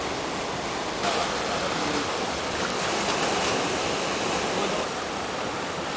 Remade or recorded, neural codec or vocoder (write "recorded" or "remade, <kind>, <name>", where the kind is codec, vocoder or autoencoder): recorded